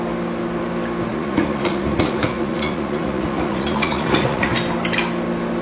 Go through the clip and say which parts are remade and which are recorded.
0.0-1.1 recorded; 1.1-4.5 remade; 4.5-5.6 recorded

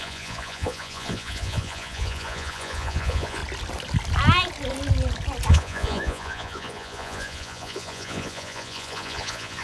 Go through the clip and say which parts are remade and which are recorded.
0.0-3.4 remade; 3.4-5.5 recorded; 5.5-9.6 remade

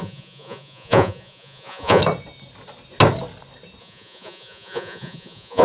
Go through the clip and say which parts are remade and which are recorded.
0.0-2.0 remade; 2.0-3.8 recorded; 3.8-5.6 remade

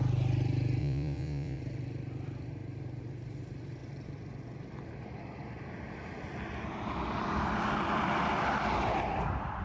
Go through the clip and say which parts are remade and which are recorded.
0.0-0.8 recorded; 0.8-1.6 remade; 1.6-9.6 recorded

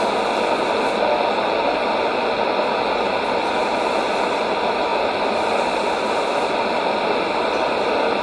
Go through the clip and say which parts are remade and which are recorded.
0.0-8.2 recorded

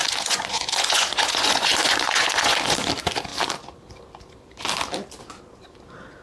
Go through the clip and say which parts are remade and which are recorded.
0.0-2.9 remade; 2.9-6.2 recorded

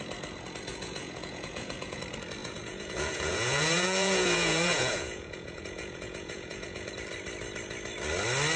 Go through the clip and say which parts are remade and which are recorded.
0.0-0.7 recorded; 0.7-2.0 remade; 2.0-2.4 recorded; 2.4-6.9 remade; 6.9-8.6 recorded